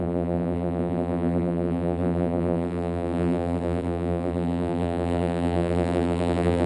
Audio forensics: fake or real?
fake